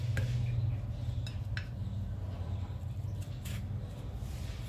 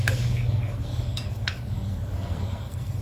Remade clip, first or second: second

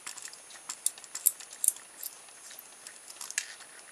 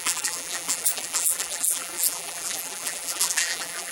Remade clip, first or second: second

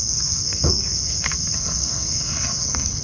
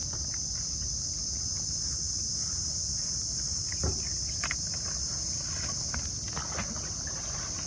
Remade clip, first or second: first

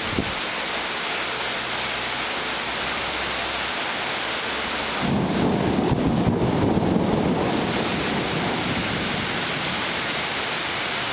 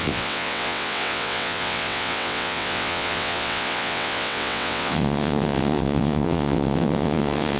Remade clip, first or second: second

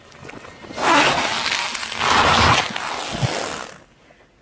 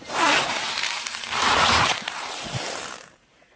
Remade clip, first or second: second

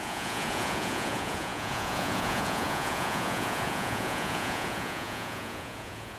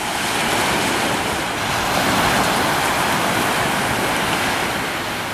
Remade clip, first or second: first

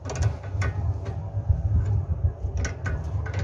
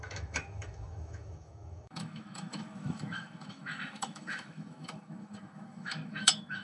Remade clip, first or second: second